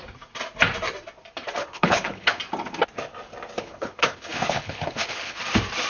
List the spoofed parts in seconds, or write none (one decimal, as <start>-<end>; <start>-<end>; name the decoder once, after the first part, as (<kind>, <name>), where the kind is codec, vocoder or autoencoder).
1.6-2.4 (codec, HILCodec); 3.6-5.4